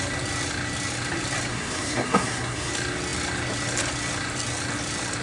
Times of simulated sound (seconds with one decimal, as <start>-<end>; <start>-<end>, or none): 1.5-2.7